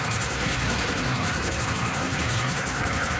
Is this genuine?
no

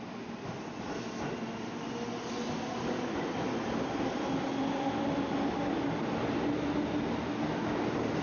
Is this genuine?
yes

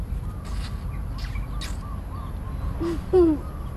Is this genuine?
yes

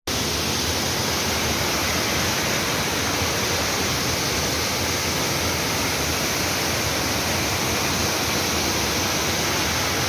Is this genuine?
yes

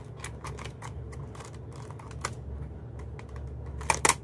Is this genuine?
yes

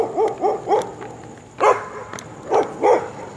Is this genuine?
yes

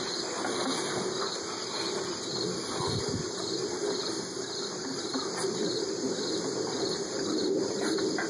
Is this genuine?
yes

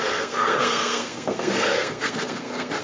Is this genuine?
no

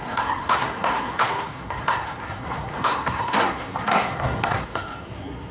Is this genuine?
no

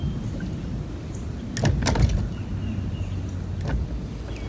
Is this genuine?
yes